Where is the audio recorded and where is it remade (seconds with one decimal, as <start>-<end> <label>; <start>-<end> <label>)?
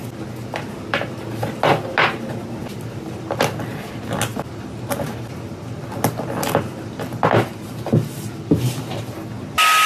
0.0-2.6 recorded; 2.6-3.5 remade; 3.5-9.9 recorded